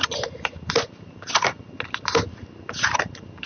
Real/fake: real